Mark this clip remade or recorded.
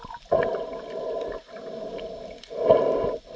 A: recorded